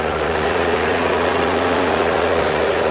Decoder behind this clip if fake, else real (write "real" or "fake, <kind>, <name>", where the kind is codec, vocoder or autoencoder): fake, vocoder, Vocos